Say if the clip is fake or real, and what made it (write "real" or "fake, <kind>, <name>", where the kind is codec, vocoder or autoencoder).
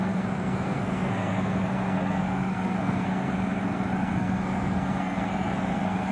fake, codec, SNAC